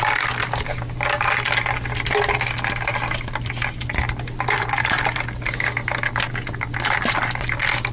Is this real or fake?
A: real